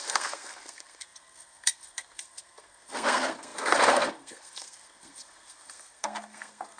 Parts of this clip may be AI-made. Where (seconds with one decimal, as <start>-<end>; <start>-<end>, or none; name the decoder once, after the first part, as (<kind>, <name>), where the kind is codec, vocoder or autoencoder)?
0.0-6.8 (codec, SNAC)